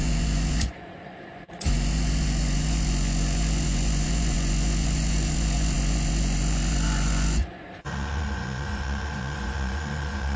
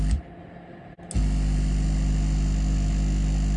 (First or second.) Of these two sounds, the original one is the second